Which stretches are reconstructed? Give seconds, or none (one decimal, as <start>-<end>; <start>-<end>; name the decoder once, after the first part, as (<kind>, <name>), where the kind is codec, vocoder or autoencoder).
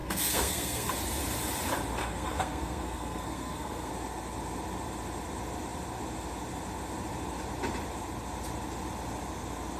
0.0-0.9 (codec, SNAC); 2.0-3.9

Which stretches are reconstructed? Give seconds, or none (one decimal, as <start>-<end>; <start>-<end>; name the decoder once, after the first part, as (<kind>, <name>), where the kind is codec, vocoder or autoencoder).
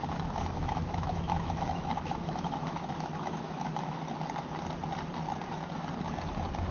0.0-4.0 (autoencoder, DAC-VAE)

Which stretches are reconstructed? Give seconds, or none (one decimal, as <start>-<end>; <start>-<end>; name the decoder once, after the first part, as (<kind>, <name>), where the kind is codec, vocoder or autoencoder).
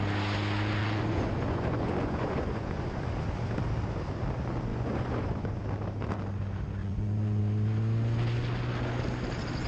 0.8-3.0 (vocoder, Vocos); 4.7-5.6; 6.8-7.4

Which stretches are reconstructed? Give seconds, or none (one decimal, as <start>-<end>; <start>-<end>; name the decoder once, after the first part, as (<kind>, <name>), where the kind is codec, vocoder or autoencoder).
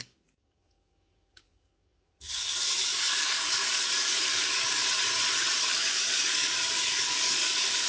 0.0-4.8 (codec, DAC); 5.6-7.9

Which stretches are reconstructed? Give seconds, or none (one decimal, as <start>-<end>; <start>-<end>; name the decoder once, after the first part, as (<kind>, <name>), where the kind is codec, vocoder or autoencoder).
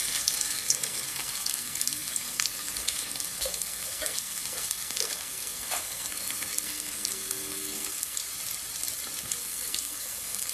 0.0-8.2 (codec, SNAC); 9.2-10.5